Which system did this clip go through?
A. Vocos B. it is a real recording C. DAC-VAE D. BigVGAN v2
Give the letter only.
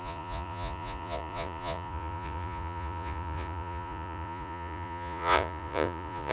A